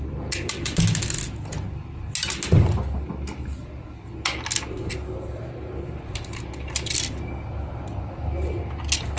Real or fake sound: real